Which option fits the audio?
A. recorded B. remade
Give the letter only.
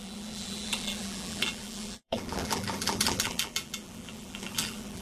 B